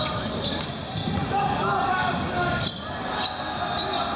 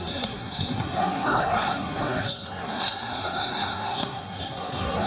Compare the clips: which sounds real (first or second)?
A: first